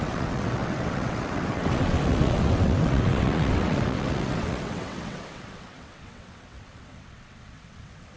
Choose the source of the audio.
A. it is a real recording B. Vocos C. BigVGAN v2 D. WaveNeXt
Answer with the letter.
D